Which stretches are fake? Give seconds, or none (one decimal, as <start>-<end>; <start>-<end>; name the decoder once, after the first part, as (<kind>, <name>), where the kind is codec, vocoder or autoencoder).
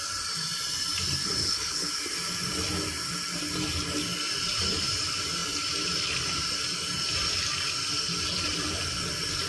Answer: 1.4-1.9 (codec, HILCodec)